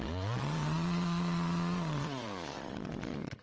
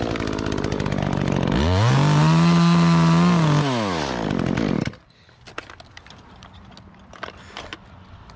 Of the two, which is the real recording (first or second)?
second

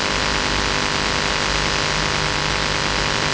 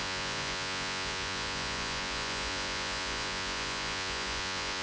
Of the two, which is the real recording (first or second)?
first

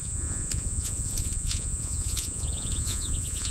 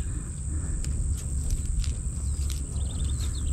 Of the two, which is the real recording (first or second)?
second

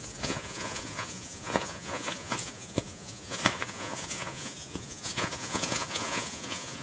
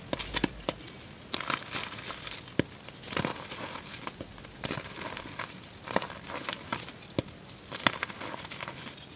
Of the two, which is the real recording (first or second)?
second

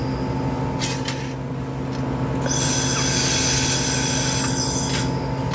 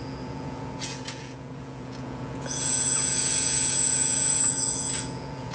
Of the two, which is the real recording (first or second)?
first